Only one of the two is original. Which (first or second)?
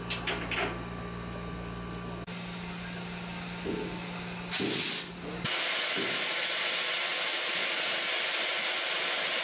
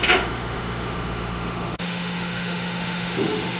first